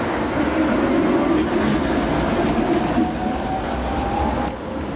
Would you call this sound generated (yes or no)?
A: no